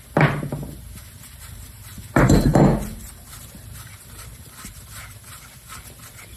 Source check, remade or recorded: remade